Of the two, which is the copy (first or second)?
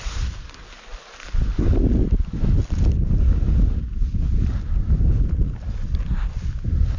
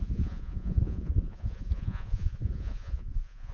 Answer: second